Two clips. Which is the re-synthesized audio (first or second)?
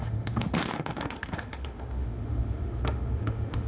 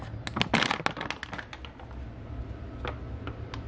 first